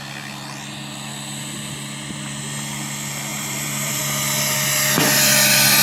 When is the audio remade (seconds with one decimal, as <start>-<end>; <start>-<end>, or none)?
3.3-4.0